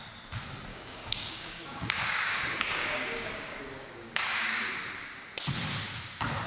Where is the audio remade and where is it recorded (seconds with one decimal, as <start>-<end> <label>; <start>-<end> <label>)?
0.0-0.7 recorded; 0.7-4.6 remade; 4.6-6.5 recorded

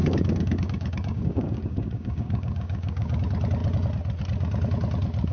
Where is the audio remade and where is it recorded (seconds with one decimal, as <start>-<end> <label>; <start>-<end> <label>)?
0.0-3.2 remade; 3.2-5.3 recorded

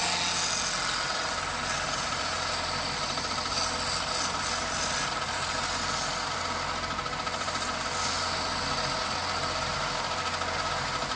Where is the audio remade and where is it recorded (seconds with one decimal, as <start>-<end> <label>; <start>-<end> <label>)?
0.0-11.2 recorded